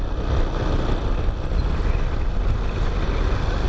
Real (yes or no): yes